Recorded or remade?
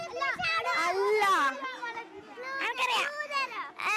recorded